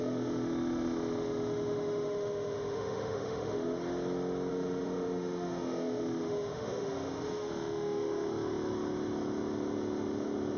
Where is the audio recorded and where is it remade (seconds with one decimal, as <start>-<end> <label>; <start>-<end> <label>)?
0.0-3.7 remade; 3.7-4.5 recorded; 4.5-10.6 remade